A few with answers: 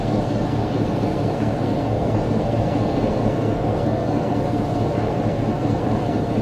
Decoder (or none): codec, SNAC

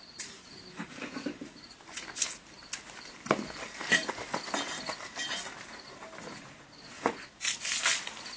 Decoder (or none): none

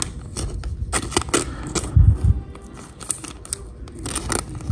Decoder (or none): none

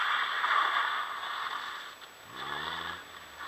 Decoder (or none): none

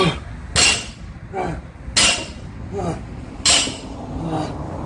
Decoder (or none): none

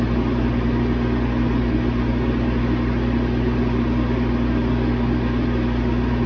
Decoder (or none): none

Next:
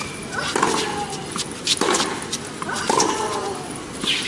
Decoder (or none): none